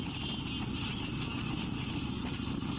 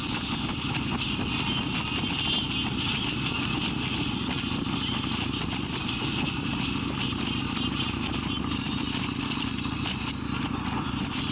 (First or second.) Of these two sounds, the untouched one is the first